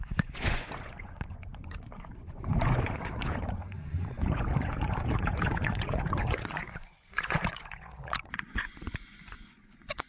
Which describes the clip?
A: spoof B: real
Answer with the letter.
A